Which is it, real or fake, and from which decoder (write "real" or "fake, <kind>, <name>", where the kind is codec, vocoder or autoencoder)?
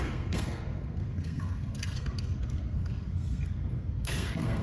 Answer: fake, codec, SNAC